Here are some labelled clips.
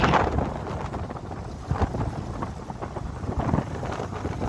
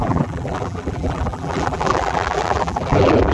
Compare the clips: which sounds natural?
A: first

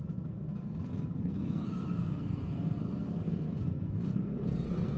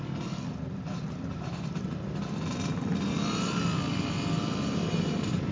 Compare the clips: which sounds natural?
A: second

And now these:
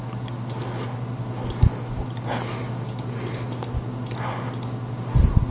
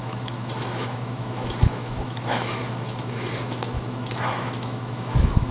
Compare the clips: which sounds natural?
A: first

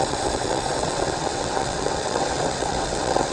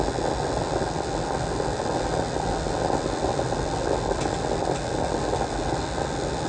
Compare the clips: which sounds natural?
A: second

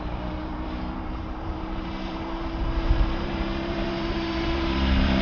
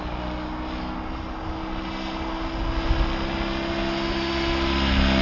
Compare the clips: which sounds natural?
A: second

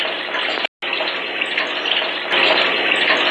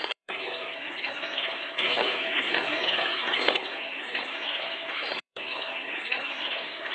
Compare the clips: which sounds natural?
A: first